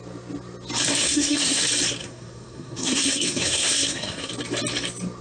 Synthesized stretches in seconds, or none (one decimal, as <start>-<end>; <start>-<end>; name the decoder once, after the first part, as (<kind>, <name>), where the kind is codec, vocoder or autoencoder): 1.0-1.6 (codec, SNAC); 2.0-4.3